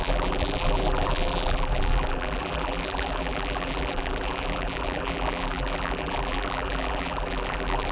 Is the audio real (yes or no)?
no